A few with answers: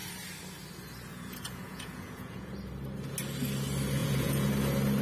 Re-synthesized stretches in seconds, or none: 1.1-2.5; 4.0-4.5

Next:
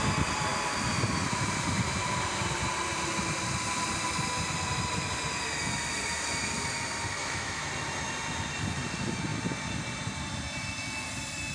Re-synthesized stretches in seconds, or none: 7.2-7.7

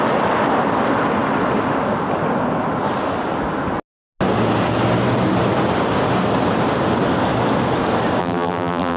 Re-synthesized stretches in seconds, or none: 8.2-9.0

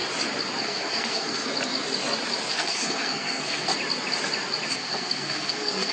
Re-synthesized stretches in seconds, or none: 0.6-1.5; 2.5-3.7; 4.7-5.9

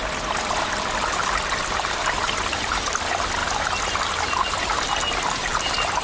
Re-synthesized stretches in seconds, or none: 0.0-3.4; 4.0-4.4; 5.4-6.0

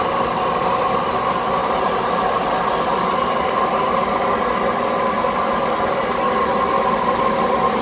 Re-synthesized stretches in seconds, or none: none

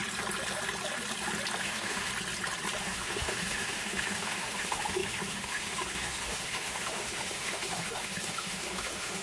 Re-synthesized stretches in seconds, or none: 1.6-2.1; 2.8-9.2